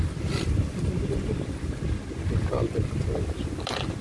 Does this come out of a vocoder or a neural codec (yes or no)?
no